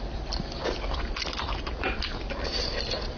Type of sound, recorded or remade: recorded